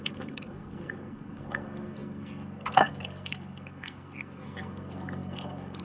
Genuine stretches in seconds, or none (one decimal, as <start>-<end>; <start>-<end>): none

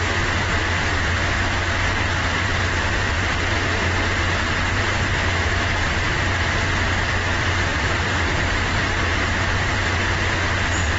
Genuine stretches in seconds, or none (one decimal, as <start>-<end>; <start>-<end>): 0.0-1.8; 5.9-7.7; 9.8-11.0

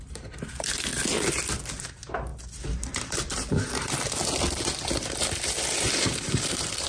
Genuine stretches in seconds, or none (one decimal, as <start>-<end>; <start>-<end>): 0.9-1.8; 2.3-5.8